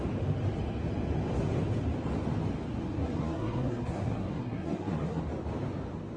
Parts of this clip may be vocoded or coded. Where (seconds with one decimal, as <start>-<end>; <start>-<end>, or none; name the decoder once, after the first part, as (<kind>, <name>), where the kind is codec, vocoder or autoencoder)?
3.0-5.2 (codec, SNAC)